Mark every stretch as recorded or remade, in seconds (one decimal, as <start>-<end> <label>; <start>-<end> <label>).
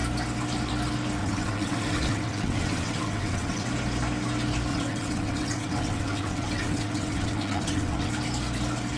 0.0-1.2 recorded; 1.2-3.7 remade; 3.7-4.7 recorded; 4.7-8.1 remade; 8.1-9.0 recorded